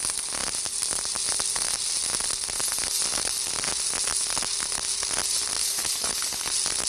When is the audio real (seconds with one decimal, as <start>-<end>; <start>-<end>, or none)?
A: 0.0-5.6; 6.5-6.9